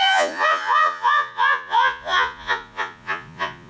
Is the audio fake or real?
fake